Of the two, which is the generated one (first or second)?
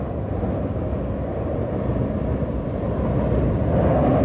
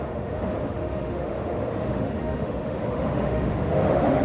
second